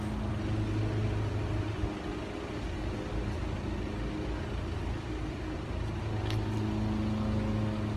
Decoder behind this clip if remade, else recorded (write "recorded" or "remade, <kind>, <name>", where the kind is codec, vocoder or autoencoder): recorded